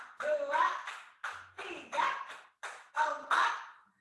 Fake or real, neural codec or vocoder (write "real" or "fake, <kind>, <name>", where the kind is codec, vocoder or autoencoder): real